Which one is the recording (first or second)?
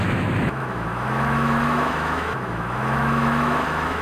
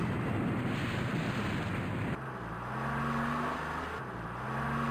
second